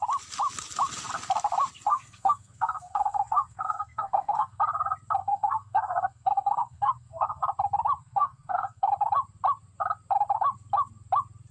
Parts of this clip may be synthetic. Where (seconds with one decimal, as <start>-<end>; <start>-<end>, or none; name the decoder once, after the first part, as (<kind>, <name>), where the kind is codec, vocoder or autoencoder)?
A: 1.9-4.6 (codec, SNAC); 5.2-7.4; 8.0-8.9